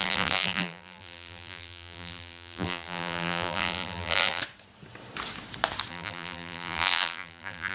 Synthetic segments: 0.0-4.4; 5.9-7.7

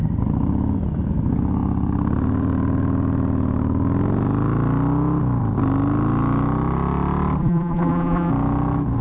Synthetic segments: 7.4-8.3

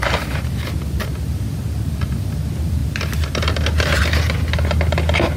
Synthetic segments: none

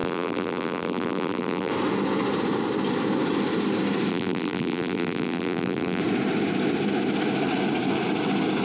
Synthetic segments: 0.0-1.7; 4.1-6.0

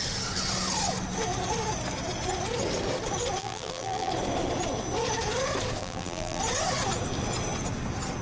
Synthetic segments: 3.4-4.1; 5.8-6.4

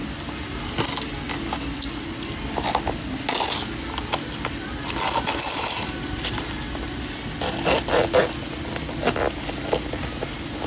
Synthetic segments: none